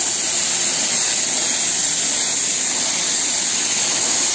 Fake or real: real